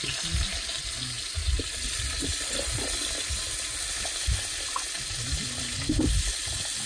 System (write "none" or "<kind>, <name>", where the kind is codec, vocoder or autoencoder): none